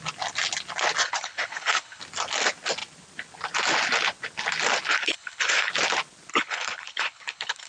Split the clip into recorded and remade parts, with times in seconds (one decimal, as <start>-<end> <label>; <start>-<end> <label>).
0.0-1.0 recorded; 1.0-2.0 remade; 2.0-4.9 recorded; 4.9-5.7 remade; 5.7-6.3 recorded; 6.3-7.7 remade